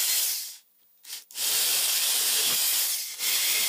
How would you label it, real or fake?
real